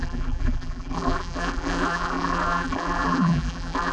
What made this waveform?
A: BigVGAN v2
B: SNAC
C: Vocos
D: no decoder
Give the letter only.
A